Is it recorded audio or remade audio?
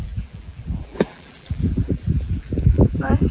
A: remade